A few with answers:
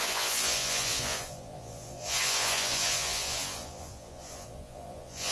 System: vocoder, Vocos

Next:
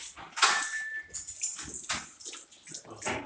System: none